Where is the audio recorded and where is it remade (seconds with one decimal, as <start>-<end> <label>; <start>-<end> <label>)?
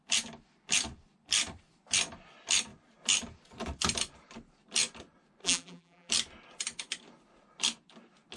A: 0.0-5.4 recorded; 5.4-6.1 remade; 6.1-8.4 recorded